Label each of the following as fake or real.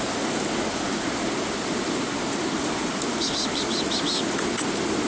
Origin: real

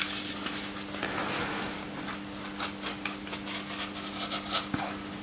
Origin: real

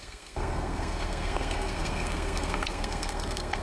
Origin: fake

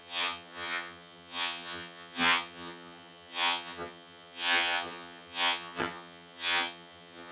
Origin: fake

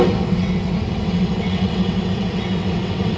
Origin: fake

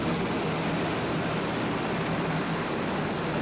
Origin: real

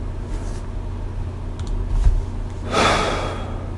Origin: real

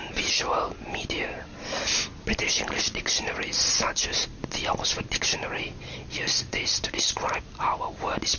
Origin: real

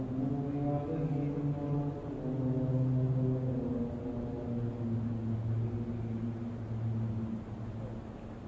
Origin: real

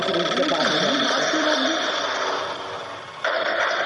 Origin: real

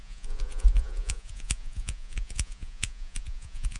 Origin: fake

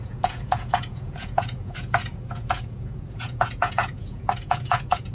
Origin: fake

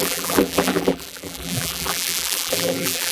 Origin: fake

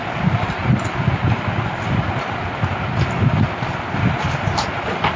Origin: real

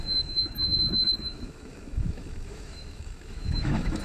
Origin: fake